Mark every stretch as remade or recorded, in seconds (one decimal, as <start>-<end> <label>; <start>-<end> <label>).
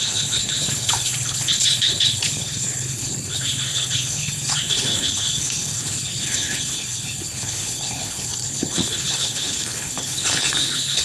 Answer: 0.0-11.0 remade